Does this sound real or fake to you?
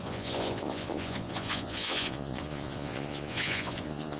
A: fake